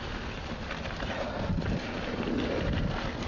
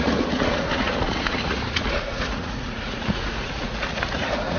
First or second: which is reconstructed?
second